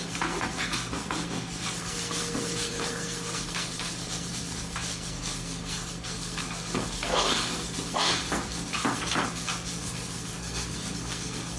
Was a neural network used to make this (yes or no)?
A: yes